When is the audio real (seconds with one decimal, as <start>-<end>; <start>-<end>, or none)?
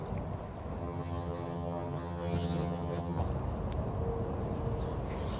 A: 0.0-0.8; 3.2-5.4